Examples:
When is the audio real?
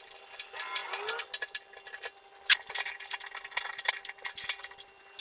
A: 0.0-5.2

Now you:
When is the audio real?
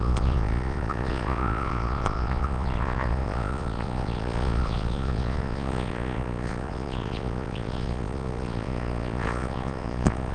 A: none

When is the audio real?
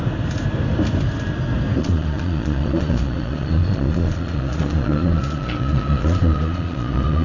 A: 0.0-1.8